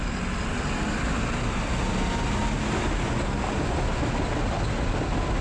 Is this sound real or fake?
real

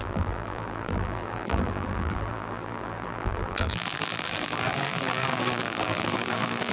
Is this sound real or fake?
fake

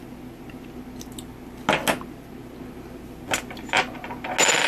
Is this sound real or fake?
real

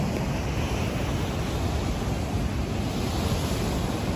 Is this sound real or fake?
real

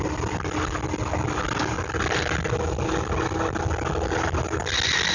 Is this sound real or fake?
real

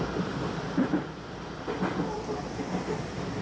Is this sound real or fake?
fake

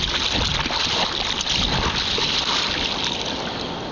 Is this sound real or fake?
real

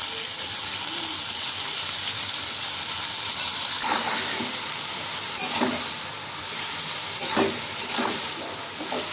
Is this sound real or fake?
fake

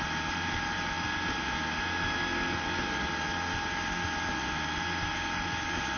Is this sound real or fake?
real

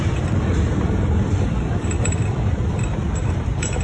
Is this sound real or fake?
fake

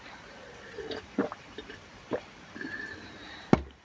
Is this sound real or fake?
fake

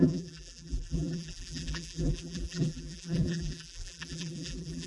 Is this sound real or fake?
fake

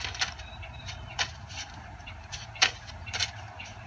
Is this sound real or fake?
fake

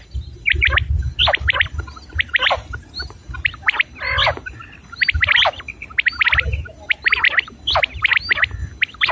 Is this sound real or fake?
real